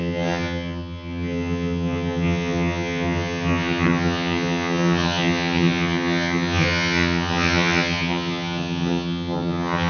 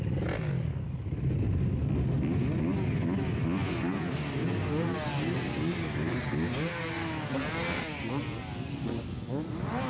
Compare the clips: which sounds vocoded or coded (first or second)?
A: first